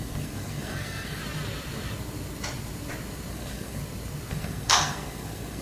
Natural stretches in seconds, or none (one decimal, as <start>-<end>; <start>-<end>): 1.2-3.3; 3.8-4.3